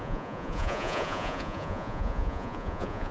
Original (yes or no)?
no